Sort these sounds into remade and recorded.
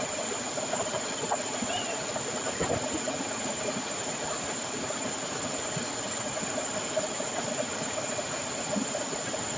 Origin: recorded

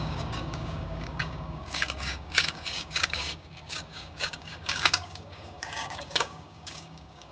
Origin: remade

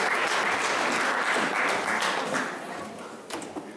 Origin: recorded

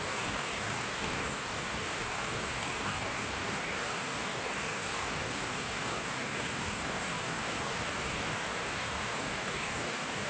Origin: remade